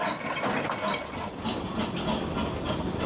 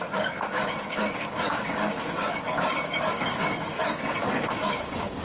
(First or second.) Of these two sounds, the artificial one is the second